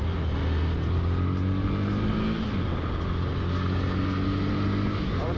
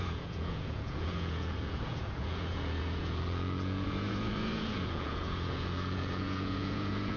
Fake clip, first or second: second